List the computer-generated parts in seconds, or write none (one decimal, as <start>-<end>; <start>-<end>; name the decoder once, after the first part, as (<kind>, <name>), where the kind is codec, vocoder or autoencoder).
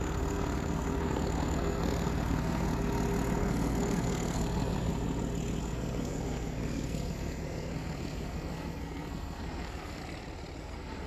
0.0-2.7 (codec, SNAC); 3.4-4.9; 5.6-10.0; 10.6-11.1